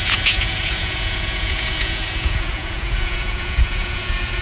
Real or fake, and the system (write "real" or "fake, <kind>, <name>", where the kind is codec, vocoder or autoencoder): fake, vocoder, Vocos